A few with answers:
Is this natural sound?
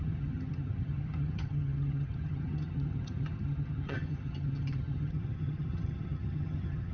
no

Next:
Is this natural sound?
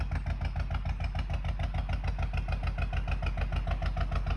yes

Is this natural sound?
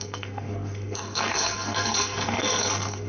no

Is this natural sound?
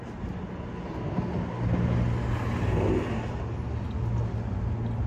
yes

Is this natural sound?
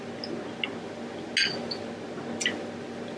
yes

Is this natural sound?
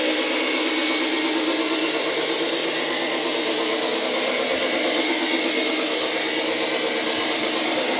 yes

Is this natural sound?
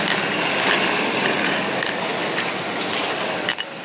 yes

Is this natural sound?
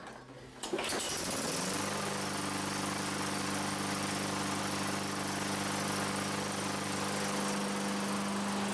yes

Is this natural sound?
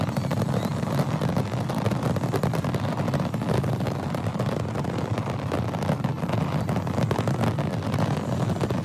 yes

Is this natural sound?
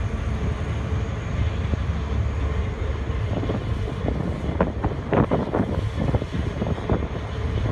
yes